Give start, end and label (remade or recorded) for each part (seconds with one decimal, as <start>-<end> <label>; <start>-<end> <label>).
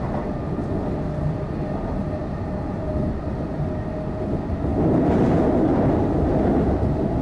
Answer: 0.0-2.2 recorded; 2.2-3.2 remade; 3.2-7.2 recorded